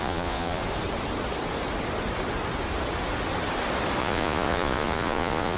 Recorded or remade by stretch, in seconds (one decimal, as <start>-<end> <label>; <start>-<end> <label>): 0.0-0.6 remade; 0.6-4.0 recorded; 4.0-5.6 remade

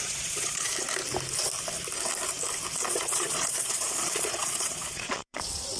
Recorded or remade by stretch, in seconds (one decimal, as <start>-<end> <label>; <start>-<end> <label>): 0.0-0.7 remade; 0.7-2.9 recorded; 2.9-5.8 remade

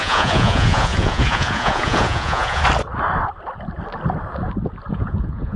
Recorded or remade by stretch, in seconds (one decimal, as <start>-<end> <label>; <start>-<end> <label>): 0.0-2.6 remade; 2.6-4.9 recorded; 4.9-5.6 remade

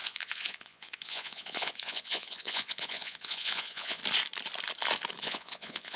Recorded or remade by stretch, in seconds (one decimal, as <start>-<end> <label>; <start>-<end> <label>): 0.0-4.0 remade; 4.0-5.2 recorded; 5.2-6.0 remade